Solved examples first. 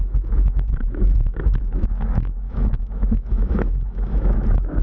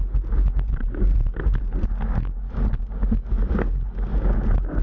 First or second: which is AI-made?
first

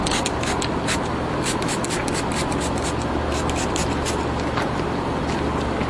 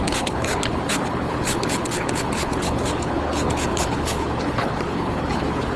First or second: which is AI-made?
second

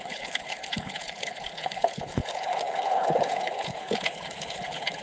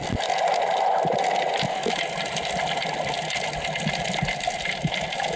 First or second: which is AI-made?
first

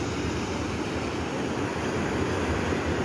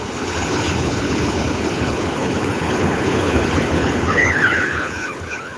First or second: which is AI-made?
second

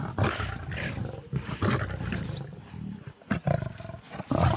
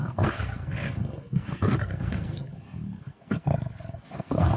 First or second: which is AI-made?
second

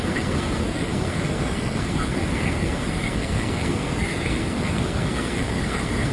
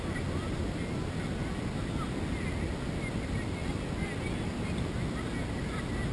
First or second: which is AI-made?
first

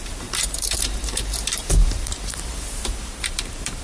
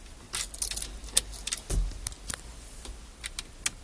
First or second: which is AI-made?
first